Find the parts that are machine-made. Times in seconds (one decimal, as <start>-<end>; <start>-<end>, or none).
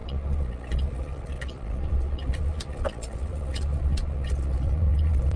0.0-5.4